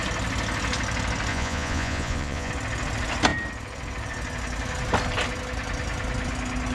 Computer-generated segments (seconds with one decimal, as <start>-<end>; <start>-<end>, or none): 1.3-2.5